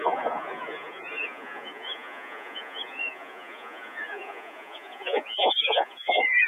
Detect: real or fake fake